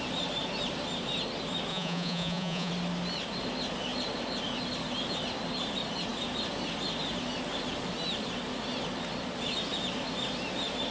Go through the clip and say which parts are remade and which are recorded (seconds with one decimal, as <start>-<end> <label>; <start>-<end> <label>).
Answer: 0.0-1.7 recorded; 1.7-2.7 remade; 2.7-10.9 recorded